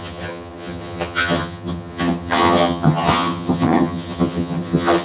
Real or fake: fake